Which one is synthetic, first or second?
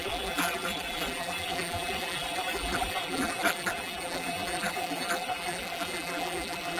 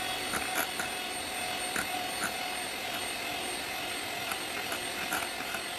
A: first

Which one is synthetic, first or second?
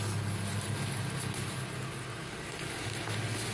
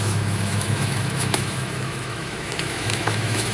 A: second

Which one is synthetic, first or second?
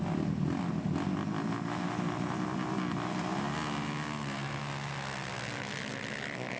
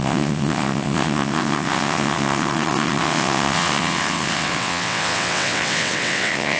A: second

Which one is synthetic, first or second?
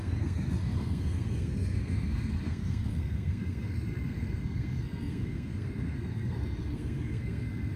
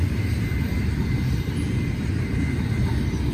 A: first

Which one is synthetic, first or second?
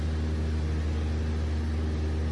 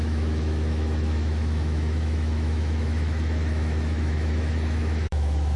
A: second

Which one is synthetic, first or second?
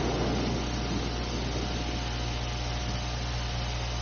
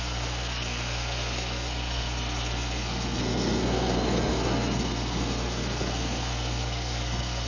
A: second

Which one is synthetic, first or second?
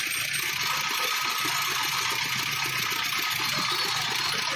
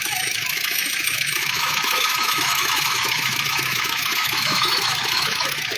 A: second